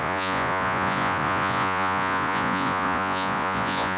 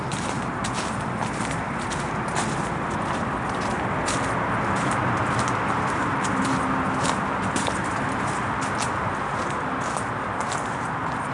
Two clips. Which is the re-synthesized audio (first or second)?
first